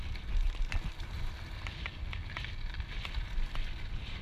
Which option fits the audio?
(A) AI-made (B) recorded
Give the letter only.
B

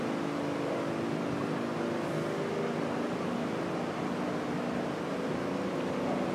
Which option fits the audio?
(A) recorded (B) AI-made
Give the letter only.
A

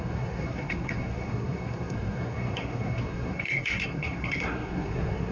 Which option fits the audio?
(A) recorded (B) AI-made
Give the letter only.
B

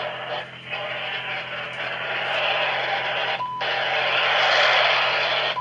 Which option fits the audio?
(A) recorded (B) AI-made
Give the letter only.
A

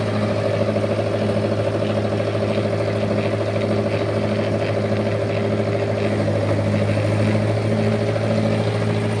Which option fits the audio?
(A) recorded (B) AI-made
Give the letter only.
A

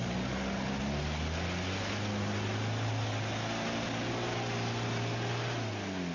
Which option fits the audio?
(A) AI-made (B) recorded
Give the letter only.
B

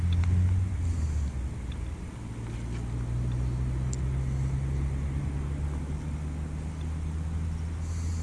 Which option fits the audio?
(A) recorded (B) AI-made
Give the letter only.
A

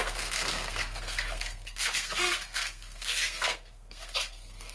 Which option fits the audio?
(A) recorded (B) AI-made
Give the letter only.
B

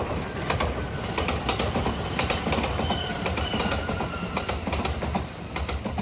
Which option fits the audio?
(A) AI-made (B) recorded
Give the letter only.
A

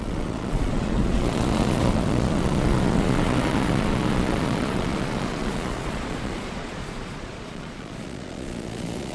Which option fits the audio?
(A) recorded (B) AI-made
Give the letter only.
B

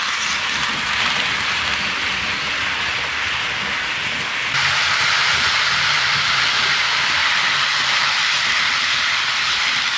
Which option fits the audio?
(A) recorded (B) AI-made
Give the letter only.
B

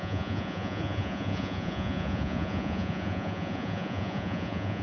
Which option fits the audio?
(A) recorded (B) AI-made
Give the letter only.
B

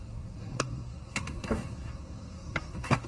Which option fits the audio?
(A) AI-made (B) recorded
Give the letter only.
A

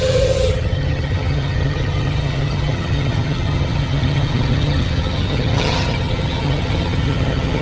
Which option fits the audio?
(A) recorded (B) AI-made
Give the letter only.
B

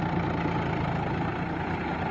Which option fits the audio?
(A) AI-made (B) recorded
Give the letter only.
B